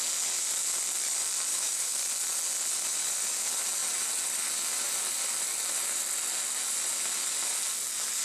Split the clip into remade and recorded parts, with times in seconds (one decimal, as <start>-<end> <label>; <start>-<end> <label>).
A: 0.0-1.5 recorded; 1.5-2.0 remade; 2.0-8.2 recorded